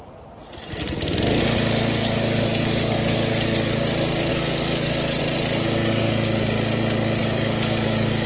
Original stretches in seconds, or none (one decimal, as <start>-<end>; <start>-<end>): 0.0-2.0; 3.8-4.3; 5.2-7.2